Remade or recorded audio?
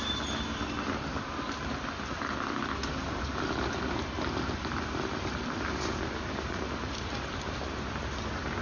recorded